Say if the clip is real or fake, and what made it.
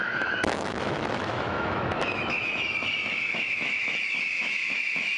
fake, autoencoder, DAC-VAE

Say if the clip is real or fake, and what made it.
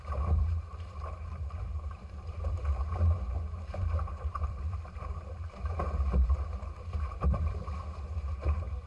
fake, vocoder, BigVGAN v2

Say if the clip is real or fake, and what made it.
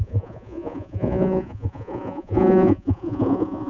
fake, vocoder, Vocos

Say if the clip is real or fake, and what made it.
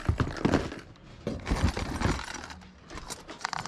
real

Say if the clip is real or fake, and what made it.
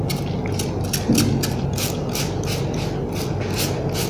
real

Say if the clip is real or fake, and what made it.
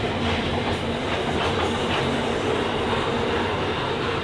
fake, vocoder, BigVGAN v2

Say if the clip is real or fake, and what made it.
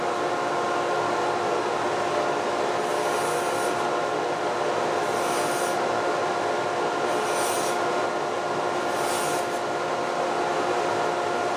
real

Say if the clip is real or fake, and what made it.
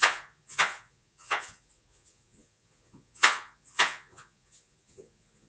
fake, vocoder, Vocos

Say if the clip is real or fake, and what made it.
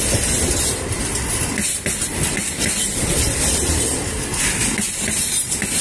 real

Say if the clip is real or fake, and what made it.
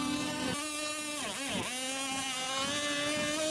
real